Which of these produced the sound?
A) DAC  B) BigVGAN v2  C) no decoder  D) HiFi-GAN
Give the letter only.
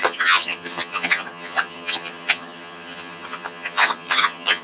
D